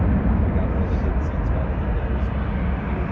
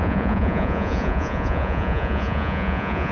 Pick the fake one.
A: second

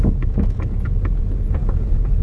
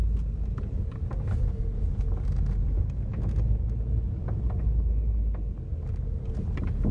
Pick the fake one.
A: first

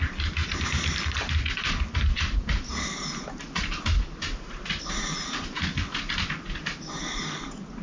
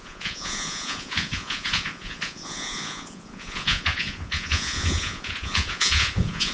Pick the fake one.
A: second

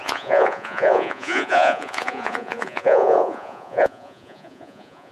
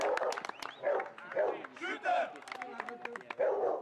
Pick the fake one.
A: first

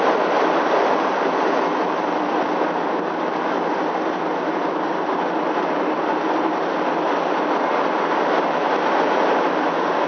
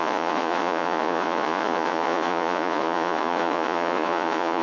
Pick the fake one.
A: second